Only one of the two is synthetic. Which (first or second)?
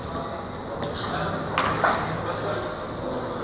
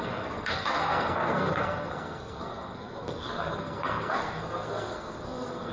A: second